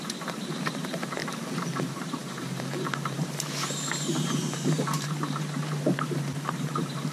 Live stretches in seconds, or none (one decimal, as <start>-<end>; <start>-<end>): 1.2-1.8